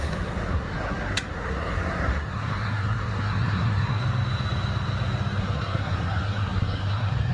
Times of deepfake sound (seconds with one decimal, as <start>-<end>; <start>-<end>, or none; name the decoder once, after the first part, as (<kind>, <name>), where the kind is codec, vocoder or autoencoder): 0.0-4.0 (codec, SNAC); 5.4-7.3